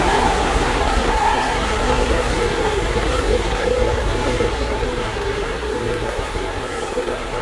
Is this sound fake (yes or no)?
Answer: yes